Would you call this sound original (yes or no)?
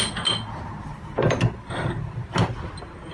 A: yes